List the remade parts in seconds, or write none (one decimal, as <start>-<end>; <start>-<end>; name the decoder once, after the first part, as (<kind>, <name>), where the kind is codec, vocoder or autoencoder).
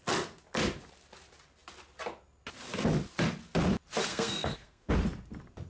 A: 4.1-4.9 (codec, SNAC)